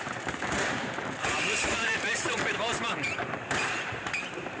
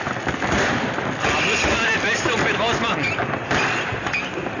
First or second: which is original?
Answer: second